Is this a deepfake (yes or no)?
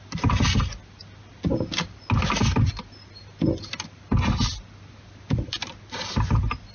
no